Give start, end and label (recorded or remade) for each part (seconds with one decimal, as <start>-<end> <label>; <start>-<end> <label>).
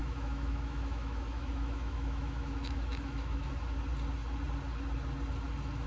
0.0-3.5 remade; 3.5-5.9 recorded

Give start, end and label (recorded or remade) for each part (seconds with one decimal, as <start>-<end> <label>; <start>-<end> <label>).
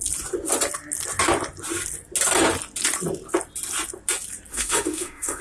0.0-4.5 recorded; 4.5-5.4 remade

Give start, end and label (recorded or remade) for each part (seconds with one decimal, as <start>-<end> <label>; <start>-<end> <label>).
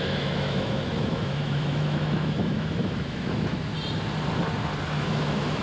0.0-3.7 remade; 3.7-5.0 recorded; 5.0-5.6 remade